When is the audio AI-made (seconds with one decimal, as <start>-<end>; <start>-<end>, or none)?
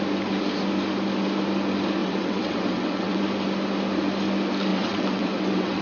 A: 2.0-3.2; 4.7-5.8